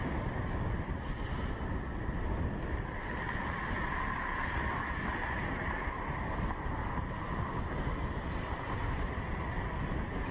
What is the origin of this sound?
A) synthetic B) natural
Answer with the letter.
B